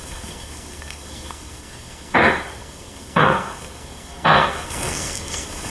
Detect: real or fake fake